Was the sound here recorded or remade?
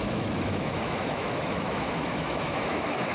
remade